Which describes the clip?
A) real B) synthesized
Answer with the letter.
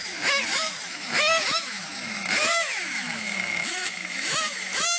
B